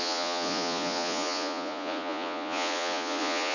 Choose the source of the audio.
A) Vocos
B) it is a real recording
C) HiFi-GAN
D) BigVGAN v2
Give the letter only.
A